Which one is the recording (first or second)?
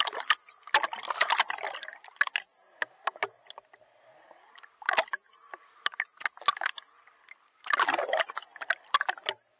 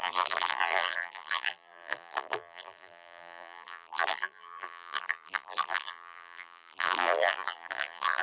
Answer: first